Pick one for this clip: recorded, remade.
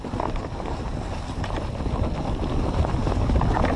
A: recorded